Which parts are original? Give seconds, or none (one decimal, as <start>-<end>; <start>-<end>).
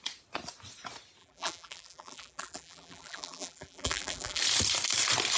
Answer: 0.0-1.2; 4.4-5.4